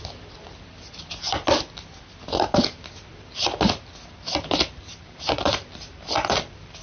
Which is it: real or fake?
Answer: real